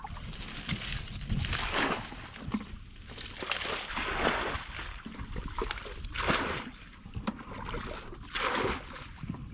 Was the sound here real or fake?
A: real